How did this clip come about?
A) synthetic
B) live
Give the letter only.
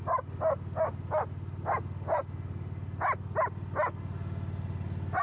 B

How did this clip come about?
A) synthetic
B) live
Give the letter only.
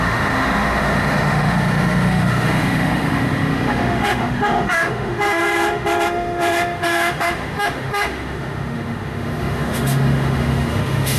A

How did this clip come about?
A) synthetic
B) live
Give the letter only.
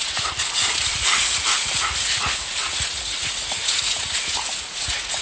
A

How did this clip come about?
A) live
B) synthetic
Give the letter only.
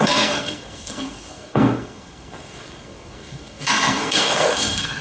B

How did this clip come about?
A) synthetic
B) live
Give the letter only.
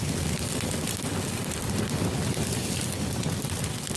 A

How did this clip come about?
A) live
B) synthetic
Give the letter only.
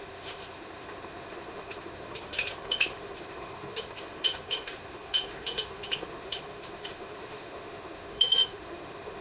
B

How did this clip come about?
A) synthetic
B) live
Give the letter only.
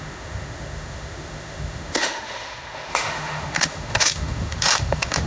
A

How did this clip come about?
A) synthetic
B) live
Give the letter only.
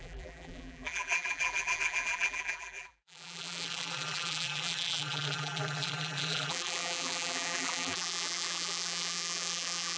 A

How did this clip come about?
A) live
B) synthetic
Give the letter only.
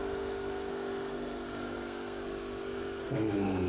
B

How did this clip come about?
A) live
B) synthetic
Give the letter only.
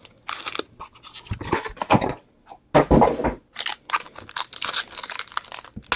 A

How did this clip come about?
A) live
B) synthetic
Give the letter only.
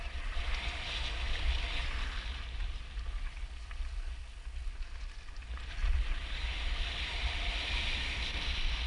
A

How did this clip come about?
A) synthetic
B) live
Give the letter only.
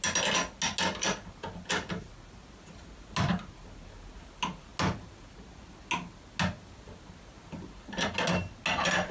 B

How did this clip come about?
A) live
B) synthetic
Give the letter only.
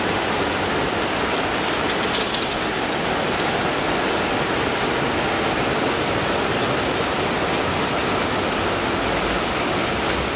A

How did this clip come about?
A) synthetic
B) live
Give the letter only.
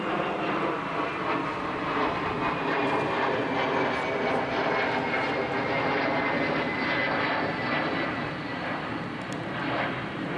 B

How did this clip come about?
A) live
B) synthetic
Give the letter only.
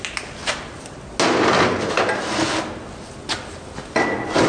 A